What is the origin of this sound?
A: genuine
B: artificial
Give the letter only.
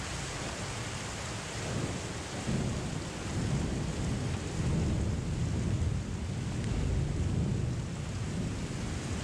A